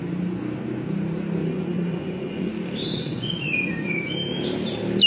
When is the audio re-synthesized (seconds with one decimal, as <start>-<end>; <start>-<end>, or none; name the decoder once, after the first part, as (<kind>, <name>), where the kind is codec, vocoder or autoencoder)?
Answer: 1.4-2.5 (vocoder, Vocos); 3.0-3.7